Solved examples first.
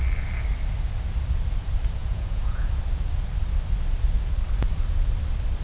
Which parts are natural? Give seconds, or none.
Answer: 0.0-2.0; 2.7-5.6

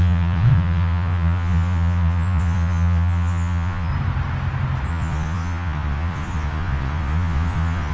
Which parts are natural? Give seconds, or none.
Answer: 3.9-4.9